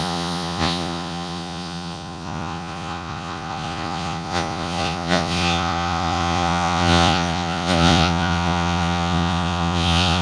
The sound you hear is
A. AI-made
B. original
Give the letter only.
A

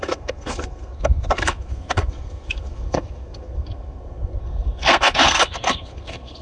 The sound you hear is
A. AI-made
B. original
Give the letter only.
A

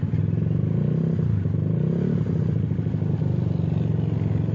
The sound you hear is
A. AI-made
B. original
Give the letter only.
B